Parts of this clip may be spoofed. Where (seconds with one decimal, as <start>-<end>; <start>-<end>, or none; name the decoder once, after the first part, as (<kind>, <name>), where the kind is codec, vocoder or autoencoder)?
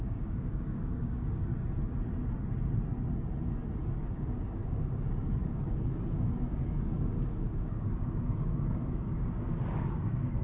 0.0-1.5 (codec, DAC); 4.0-10.4